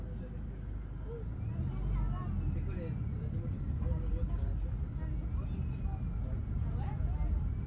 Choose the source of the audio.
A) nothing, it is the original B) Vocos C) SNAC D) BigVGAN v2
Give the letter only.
A